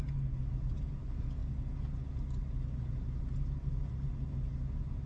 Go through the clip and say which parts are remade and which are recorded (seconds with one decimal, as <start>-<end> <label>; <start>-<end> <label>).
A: 0.0-5.1 recorded